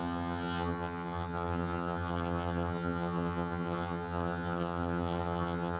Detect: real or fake fake